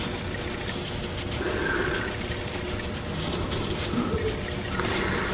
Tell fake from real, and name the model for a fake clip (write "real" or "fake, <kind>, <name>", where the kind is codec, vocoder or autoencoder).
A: real